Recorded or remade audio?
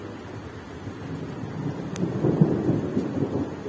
recorded